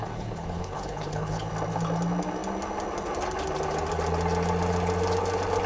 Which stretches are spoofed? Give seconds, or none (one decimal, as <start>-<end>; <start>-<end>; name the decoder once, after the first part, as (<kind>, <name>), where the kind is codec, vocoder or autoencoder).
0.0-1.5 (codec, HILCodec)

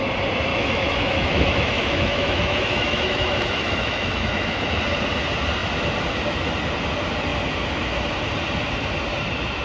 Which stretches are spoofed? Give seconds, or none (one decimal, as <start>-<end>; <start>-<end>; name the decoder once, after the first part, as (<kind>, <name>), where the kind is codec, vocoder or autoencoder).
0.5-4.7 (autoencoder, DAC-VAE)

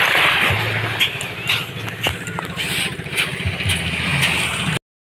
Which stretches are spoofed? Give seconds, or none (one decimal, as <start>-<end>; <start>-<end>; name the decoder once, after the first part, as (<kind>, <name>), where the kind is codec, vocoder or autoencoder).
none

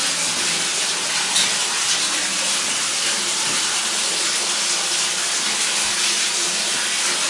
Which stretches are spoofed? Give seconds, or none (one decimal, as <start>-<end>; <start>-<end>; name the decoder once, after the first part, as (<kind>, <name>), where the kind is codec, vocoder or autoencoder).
none

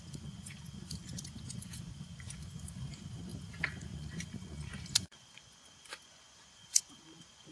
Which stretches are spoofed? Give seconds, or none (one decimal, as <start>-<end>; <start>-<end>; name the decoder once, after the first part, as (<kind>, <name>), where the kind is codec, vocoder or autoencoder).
0.0-7.5 (vocoder, Vocos)